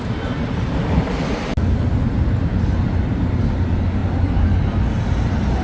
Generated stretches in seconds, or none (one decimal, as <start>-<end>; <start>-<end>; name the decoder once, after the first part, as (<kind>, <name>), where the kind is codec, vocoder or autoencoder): none